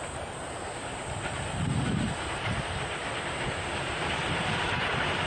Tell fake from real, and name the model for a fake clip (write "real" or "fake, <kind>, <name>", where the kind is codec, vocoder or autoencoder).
fake, vocoder, BigVGAN v2